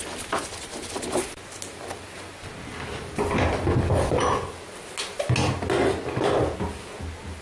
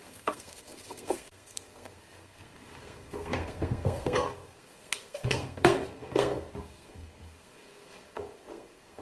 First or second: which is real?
first